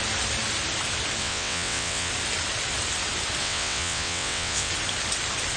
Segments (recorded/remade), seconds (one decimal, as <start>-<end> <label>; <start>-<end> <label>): 0.0-1.2 recorded; 1.2-2.1 remade; 2.1-3.4 recorded; 3.4-4.7 remade; 4.7-5.6 recorded